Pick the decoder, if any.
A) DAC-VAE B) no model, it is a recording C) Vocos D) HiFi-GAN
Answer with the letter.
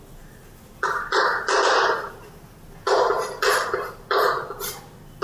B